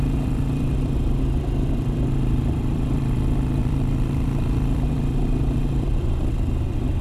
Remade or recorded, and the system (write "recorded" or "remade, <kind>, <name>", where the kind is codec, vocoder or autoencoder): remade, vocoder, BigVGAN v2